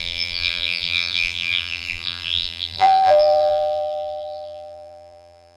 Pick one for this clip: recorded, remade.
remade